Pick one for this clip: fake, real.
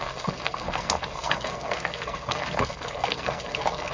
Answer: fake